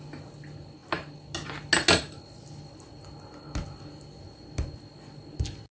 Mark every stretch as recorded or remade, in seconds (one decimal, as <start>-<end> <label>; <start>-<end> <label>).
0.0-5.7 recorded